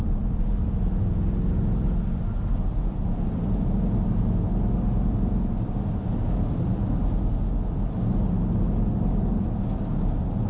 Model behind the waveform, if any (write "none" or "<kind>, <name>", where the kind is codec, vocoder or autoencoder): none